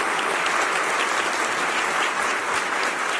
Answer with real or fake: real